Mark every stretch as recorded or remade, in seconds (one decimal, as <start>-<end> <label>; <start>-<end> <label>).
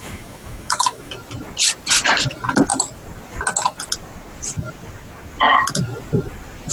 0.0-1.1 remade; 1.1-6.7 recorded